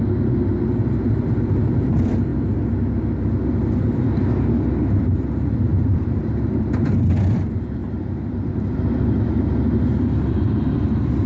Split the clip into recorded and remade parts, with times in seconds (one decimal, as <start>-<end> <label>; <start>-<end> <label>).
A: 0.0-5.7 recorded; 5.7-6.6 remade; 6.6-11.3 recorded